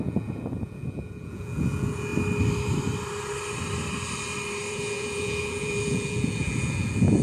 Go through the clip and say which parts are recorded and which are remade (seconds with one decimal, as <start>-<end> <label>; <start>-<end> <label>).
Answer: 0.0-2.1 remade; 2.1-4.7 recorded; 4.7-7.2 remade